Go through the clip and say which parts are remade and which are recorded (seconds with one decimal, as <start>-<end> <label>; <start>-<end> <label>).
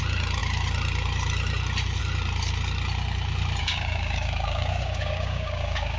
0.0-3.6 recorded; 3.6-6.0 remade